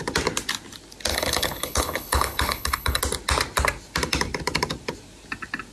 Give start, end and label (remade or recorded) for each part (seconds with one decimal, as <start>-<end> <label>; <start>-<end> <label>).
0.0-1.1 recorded; 1.1-3.0 remade; 3.0-5.7 recorded